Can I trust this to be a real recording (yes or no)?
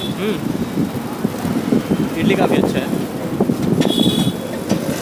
yes